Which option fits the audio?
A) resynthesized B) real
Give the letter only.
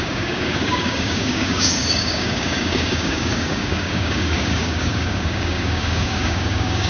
A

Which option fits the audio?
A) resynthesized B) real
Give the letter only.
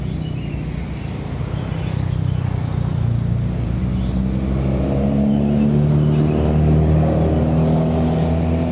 B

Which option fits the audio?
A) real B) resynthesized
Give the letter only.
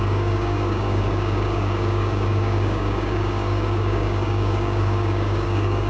B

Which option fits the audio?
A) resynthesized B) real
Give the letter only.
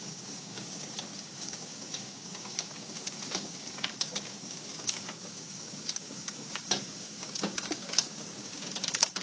A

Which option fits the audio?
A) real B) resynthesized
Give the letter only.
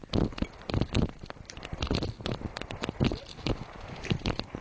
A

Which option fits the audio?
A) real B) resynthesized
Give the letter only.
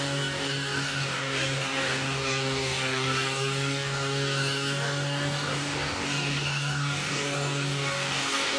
B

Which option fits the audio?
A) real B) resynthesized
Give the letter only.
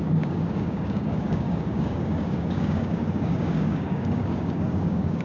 B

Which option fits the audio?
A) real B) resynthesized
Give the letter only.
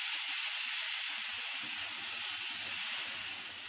A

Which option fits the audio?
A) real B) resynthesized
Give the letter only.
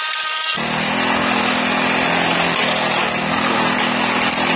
A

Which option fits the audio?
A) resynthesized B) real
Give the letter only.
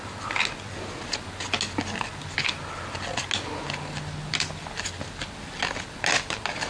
B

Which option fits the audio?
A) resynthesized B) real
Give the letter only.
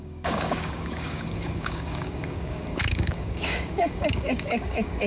A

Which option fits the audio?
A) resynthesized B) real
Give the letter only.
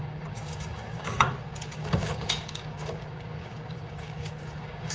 A